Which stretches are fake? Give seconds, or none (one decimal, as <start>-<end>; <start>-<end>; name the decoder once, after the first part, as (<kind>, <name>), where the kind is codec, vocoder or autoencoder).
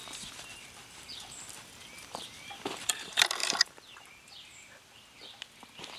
0.0-2.9 (vocoder, BigVGAN v2); 3.4-4.1